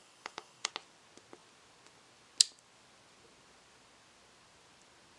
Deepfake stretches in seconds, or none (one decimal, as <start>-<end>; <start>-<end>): 0.0-0.7